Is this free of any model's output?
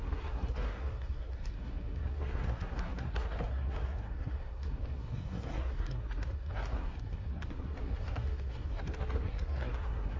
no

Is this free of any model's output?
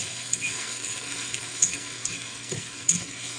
no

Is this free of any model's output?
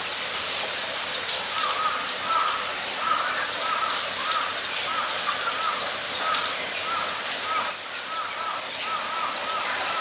yes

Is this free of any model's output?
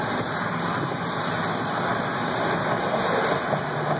yes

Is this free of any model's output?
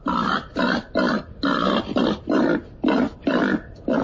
yes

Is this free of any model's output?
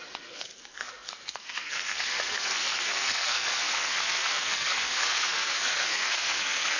no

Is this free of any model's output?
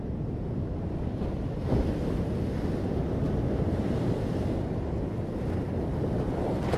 yes